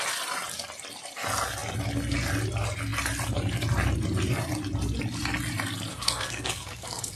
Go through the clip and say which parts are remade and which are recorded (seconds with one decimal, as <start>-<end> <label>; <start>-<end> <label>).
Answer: 0.0-5.9 recorded; 5.9-7.2 remade